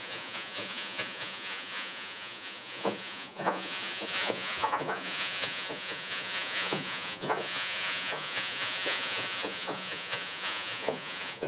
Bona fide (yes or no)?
no